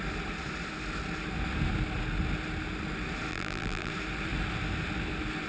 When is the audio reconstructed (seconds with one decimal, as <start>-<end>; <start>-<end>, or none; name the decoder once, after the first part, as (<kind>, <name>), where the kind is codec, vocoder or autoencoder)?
3.3-3.9 (vocoder, BigVGAN v2)